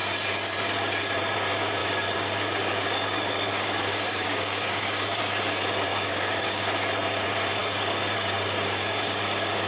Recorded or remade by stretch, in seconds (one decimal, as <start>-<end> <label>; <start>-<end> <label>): 0.0-1.8 recorded; 1.8-5.2 remade; 5.2-5.9 recorded; 5.9-6.6 remade; 6.6-7.6 recorded; 7.6-9.7 remade

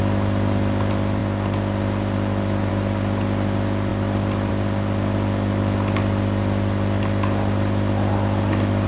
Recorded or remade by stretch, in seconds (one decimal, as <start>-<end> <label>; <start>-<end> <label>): 0.0-8.9 recorded

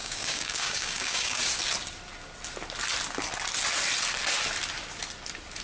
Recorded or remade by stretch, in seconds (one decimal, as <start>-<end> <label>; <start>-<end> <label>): 0.0-1.4 remade; 1.4-5.6 recorded